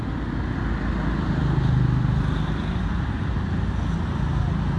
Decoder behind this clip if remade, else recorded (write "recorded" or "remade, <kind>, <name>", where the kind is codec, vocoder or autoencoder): recorded